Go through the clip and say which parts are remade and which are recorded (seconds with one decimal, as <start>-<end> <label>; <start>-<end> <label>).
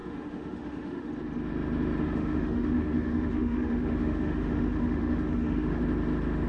0.0-1.1 remade; 1.1-2.0 recorded; 2.0-5.8 remade; 5.8-6.5 recorded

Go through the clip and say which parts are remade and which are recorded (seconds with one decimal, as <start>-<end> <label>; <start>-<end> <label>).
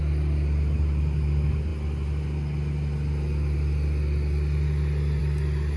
0.0-5.8 recorded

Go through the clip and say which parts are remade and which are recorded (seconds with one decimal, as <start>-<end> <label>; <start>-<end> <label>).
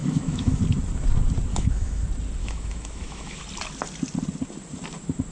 0.0-0.6 remade; 0.6-1.5 recorded; 1.5-2.0 remade; 2.0-2.4 recorded; 2.4-3.4 remade; 3.4-5.3 recorded